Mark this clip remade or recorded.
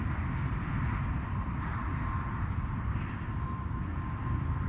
recorded